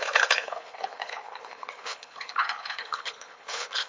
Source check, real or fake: fake